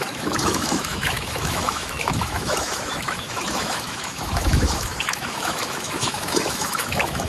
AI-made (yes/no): yes